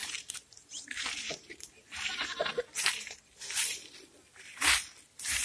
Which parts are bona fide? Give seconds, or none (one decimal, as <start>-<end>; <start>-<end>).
3.2-5.4